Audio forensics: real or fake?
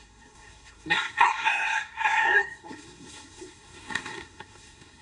fake